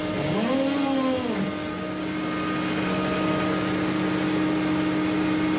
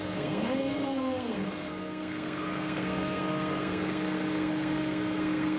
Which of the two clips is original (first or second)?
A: first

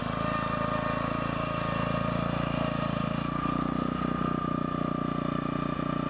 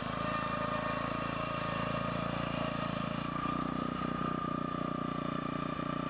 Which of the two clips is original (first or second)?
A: first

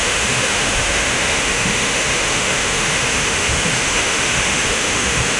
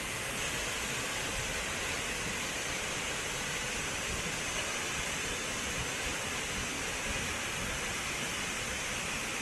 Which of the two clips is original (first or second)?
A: second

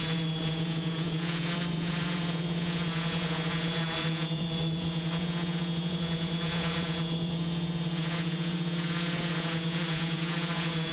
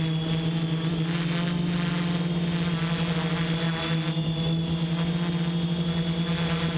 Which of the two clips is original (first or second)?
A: second